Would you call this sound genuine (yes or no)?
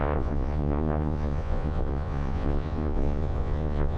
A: no